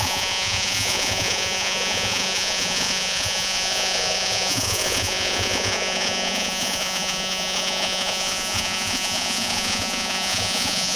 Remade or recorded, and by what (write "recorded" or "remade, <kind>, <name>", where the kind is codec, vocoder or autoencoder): remade, vocoder, Vocos